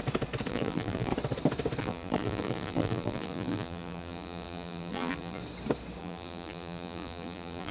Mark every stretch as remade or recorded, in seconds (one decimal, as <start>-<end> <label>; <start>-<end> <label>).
0.0-0.5 recorded; 0.5-1.1 remade; 1.1-1.8 recorded; 1.8-5.4 remade; 5.4-6.0 recorded; 6.0-7.7 remade